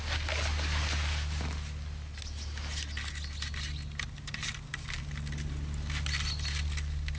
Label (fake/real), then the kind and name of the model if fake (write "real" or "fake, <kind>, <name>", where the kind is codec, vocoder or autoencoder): real